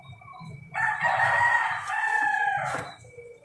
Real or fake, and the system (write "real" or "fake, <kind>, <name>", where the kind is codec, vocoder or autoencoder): real